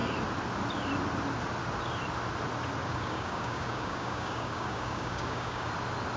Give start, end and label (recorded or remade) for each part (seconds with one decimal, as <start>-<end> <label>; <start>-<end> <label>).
0.0-2.8 recorded; 2.8-5.7 remade; 5.7-6.2 recorded